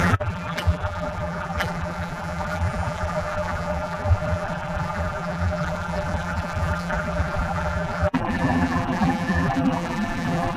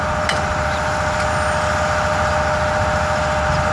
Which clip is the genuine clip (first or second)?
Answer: second